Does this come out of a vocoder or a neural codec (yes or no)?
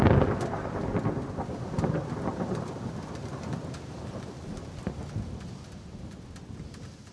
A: no